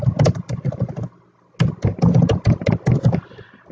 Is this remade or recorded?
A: recorded